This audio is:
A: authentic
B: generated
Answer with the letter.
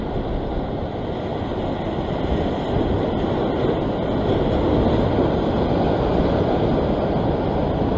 A